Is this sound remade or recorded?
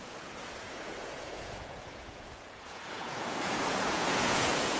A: remade